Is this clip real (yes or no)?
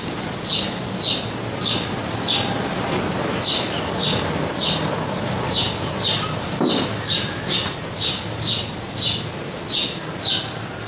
yes